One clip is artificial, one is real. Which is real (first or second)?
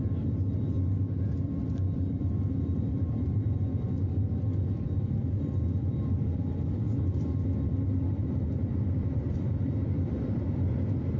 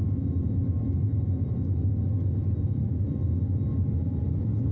second